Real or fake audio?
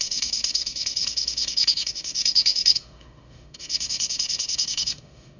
fake